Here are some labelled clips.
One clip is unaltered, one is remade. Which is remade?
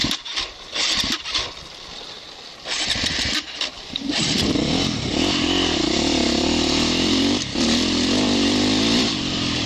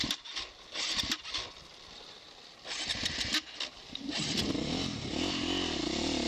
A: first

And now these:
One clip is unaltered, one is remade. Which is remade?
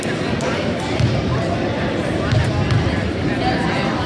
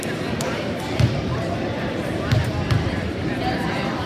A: second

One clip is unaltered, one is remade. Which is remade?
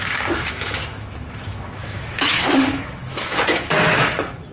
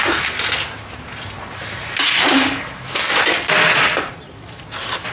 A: first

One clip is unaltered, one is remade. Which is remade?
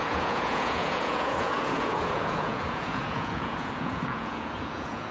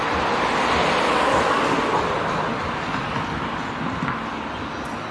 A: first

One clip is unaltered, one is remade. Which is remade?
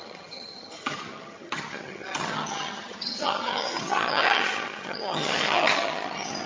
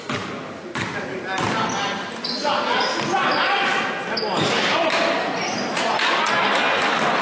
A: first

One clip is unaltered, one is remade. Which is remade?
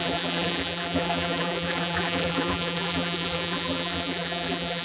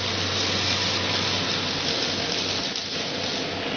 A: first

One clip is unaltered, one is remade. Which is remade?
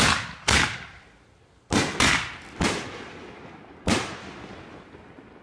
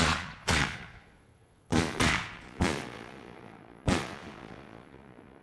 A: second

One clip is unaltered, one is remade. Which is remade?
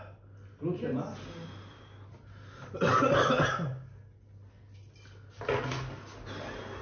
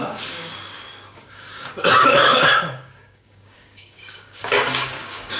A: second